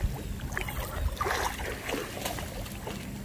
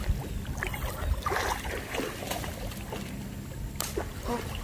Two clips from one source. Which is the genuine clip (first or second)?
first